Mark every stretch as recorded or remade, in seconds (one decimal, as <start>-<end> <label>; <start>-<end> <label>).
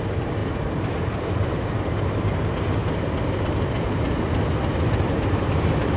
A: 0.0-2.8 remade; 2.8-3.3 recorded; 3.3-6.0 remade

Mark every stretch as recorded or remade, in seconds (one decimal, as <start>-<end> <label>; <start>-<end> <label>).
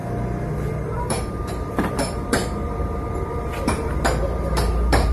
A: 0.0-0.5 recorded; 0.5-5.1 remade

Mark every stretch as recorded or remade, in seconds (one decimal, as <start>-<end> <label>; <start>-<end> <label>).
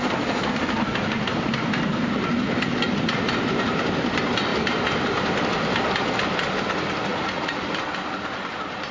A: 0.0-7.1 recorded; 7.1-7.7 remade; 7.7-8.9 recorded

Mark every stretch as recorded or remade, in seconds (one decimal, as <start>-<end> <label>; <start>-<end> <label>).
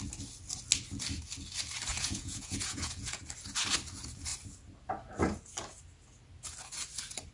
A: 0.0-1.9 recorded; 1.9-3.2 remade; 3.2-7.3 recorded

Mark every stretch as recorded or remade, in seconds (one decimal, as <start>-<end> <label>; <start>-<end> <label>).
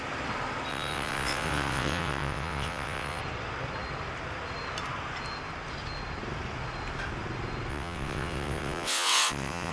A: 0.0-0.7 recorded; 0.7-3.2 remade; 3.2-7.7 recorded; 7.7-9.7 remade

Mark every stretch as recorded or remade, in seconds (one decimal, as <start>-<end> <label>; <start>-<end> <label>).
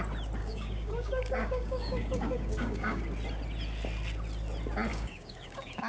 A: 0.0-0.4 recorded; 0.4-3.0 remade; 3.0-4.9 recorded; 4.9-5.9 remade